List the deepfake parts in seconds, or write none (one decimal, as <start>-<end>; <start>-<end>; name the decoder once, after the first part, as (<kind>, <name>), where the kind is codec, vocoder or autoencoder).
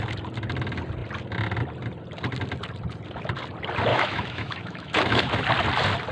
3.9-5.3 (autoencoder, DAC-VAE)